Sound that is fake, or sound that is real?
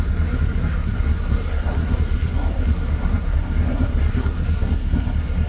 fake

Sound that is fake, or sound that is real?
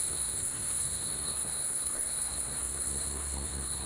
fake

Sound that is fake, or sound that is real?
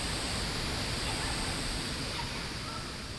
real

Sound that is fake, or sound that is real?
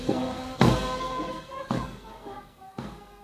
fake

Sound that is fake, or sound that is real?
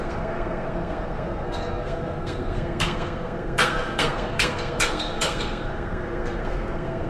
fake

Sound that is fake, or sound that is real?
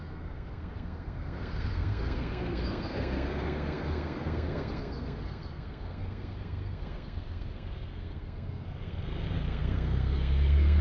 fake